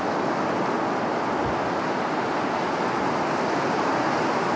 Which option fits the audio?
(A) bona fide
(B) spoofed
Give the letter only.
A